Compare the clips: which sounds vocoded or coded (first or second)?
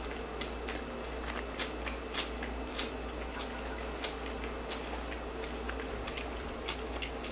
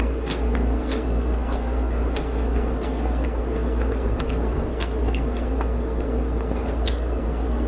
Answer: second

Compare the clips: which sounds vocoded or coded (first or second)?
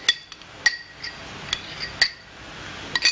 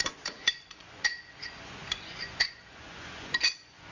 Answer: second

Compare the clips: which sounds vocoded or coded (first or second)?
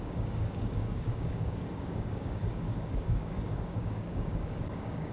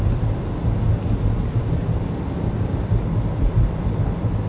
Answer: first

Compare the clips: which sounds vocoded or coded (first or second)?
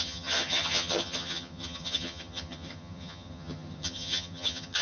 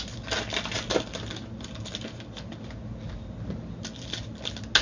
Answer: first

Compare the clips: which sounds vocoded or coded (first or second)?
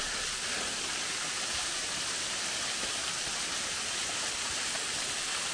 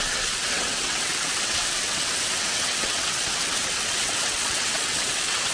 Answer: second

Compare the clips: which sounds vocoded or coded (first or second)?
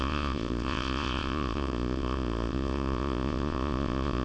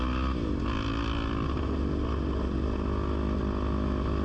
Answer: first